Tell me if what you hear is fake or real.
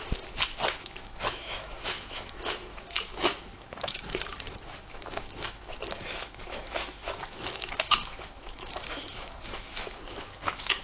fake